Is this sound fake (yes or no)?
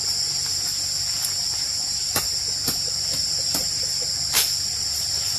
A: no